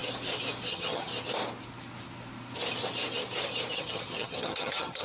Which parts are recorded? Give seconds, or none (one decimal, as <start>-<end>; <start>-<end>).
0.0-0.7; 1.1-3.7